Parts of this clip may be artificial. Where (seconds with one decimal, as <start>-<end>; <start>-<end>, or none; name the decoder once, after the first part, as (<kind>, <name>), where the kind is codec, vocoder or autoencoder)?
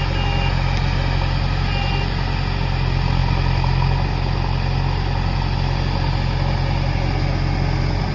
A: none